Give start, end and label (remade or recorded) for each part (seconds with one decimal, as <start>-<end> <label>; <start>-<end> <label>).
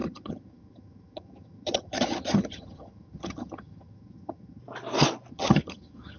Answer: 0.0-4.6 remade; 4.6-5.3 recorded; 5.3-6.2 remade